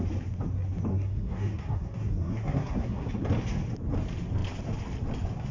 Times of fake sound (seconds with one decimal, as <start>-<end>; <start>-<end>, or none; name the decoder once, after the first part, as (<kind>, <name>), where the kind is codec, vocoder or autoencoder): 0.9-3.1 (codec, SNAC)

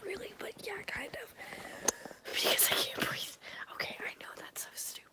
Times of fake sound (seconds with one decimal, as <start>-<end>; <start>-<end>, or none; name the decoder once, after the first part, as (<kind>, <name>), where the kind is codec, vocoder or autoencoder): none